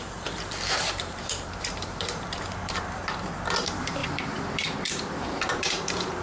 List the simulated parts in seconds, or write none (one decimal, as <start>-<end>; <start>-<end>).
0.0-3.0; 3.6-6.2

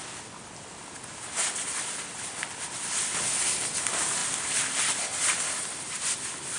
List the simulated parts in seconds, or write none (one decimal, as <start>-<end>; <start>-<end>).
none

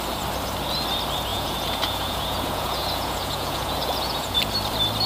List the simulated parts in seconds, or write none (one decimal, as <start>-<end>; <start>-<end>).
1.3-4.4

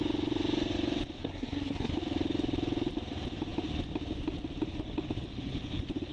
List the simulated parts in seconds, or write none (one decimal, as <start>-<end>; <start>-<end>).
1.2-1.9

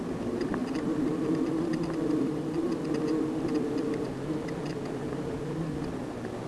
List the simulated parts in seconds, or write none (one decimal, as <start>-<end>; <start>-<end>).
none